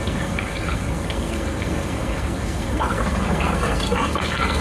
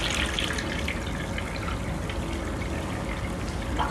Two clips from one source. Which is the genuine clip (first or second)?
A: second